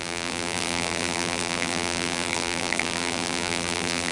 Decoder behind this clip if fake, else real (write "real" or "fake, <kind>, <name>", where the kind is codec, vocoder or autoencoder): fake, vocoder, BigVGAN v2